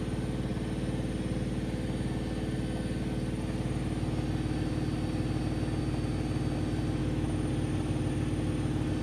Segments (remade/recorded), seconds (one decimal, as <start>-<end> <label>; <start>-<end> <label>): 0.0-7.0 recorded; 7.0-7.5 remade; 7.5-9.0 recorded